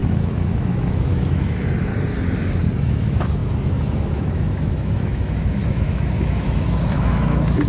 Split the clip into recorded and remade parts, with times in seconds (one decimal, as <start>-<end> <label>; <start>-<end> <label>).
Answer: 0.0-1.9 remade; 1.9-2.8 recorded; 2.8-7.7 remade